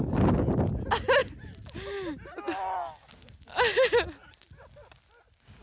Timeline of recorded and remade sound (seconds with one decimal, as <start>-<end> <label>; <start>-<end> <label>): 0.0-5.6 recorded